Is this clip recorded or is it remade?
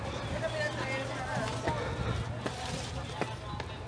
recorded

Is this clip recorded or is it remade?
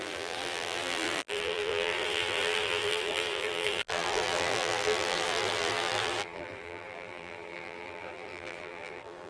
remade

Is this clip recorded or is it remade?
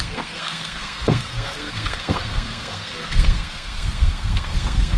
remade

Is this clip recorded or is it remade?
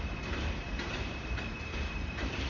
remade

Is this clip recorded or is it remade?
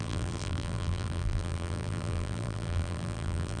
remade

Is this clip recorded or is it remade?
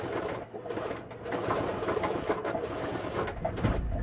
recorded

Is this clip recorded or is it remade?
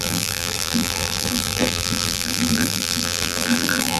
remade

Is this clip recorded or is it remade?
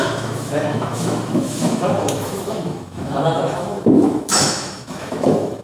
remade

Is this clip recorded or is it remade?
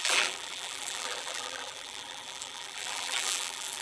remade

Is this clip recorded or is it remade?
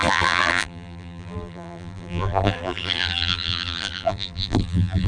remade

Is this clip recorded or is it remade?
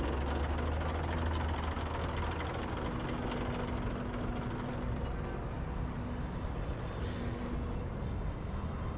recorded